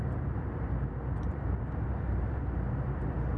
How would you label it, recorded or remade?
remade